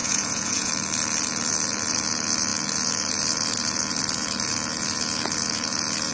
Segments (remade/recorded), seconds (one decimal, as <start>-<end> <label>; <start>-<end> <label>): 0.0-0.7 remade; 0.7-6.1 recorded